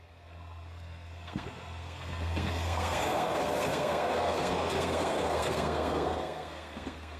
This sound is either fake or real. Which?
fake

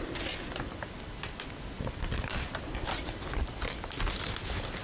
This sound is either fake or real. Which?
real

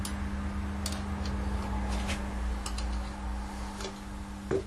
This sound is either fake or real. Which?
real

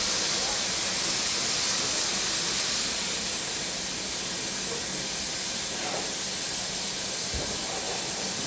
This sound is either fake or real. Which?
real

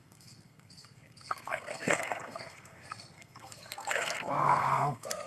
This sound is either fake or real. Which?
fake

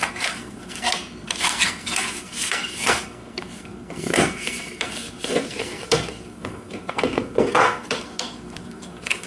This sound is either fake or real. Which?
fake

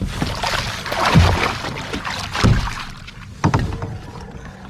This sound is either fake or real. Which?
real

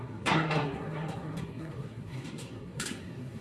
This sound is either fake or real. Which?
fake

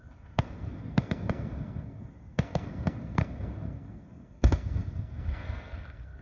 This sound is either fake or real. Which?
fake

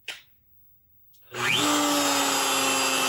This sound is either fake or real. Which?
real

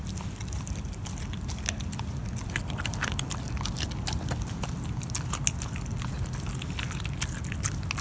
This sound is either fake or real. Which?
real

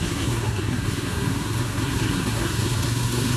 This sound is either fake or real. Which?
fake